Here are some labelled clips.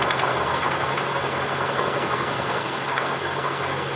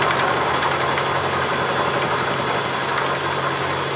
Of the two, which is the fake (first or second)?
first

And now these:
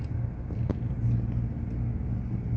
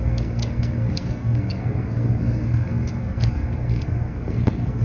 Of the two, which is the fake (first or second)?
second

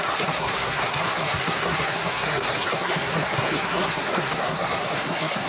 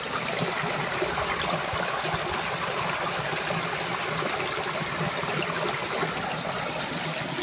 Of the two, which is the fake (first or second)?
first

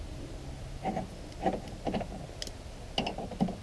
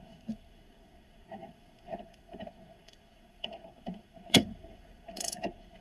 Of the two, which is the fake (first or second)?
second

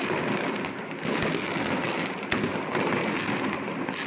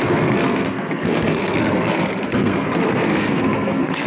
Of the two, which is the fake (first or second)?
second